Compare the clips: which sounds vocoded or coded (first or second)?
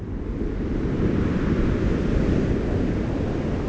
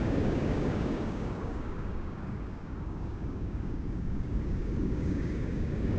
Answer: second